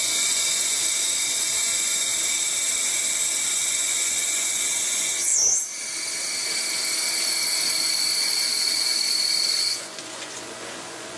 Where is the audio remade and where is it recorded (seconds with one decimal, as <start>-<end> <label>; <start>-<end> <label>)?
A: 0.0-2.1 remade; 2.1-3.5 recorded; 3.5-5.3 remade; 5.3-9.6 recorded; 9.6-11.2 remade